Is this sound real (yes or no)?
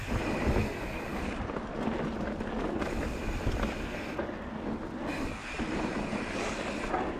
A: yes